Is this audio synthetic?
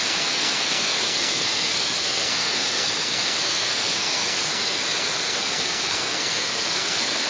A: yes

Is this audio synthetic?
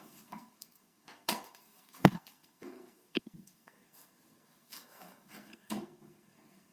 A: yes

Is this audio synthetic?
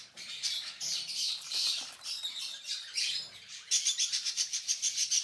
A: yes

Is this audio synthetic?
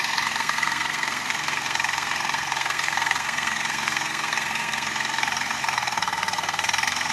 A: yes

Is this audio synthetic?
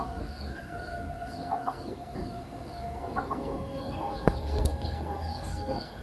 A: yes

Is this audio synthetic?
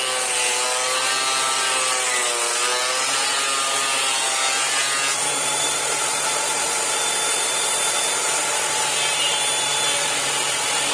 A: no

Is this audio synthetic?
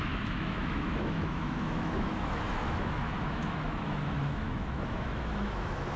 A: yes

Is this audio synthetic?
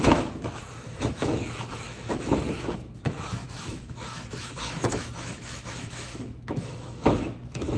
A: yes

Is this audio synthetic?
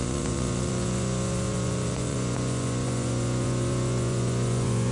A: yes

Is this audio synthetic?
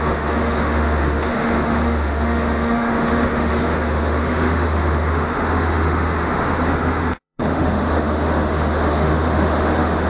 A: yes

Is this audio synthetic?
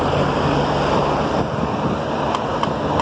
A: no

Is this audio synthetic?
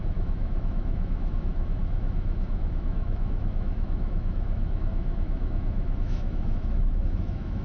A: yes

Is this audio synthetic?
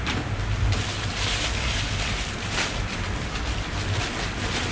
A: yes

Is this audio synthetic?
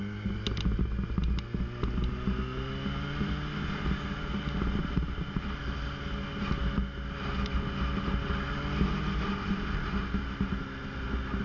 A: no